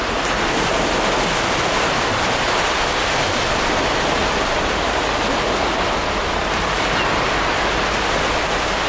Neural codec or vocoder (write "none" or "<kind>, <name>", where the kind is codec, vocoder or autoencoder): none